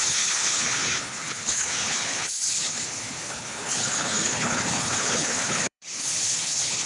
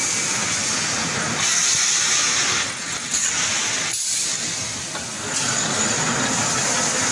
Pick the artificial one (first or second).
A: first